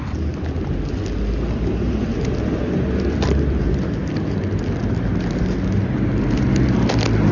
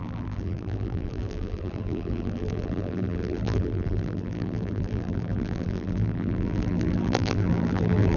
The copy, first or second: second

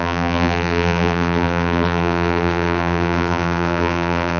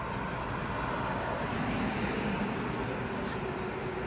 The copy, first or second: first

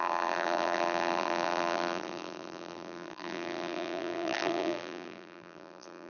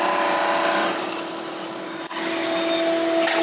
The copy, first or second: first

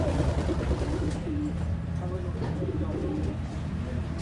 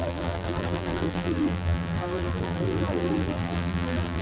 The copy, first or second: second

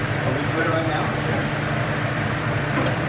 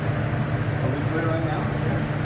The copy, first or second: first